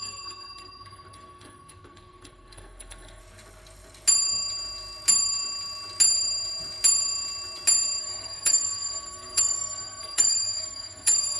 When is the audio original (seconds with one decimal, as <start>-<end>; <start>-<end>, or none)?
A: 3.2-8.0